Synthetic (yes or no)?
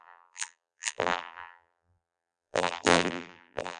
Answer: yes